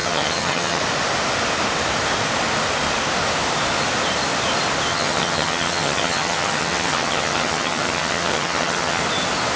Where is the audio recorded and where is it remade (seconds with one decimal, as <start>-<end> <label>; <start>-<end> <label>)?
0.0-0.8 remade; 0.8-4.9 recorded; 4.9-9.0 remade; 9.0-9.6 recorded